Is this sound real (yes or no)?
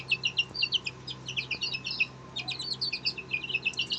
yes